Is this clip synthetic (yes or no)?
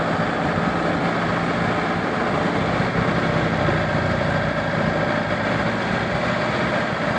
no